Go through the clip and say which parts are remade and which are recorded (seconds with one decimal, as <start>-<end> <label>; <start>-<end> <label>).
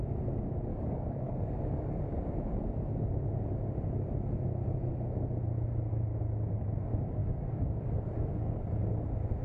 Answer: 0.0-0.7 recorded; 0.7-2.0 remade; 2.0-7.2 recorded; 7.2-8.7 remade; 8.7-9.4 recorded